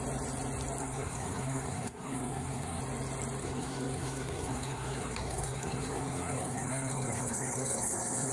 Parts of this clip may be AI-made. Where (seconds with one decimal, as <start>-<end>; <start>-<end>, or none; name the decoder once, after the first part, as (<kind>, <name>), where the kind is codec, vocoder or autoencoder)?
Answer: 0.8-2.8 (codec, SNAC); 3.4-8.3